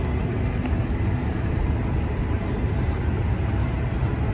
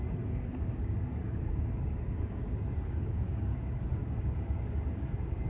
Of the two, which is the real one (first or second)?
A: first